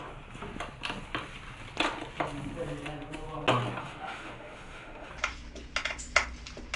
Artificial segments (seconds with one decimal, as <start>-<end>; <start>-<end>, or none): 3.8-5.1